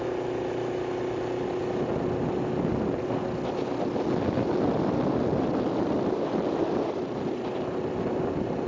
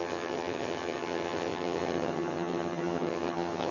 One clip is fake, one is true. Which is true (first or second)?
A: first